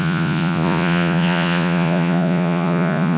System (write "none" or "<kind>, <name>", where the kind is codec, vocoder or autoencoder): vocoder, Vocos